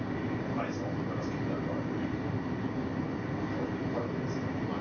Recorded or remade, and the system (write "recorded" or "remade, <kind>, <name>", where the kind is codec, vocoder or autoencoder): recorded